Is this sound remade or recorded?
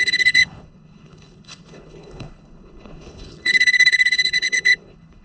remade